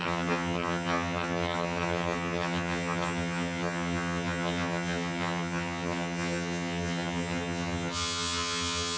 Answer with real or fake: fake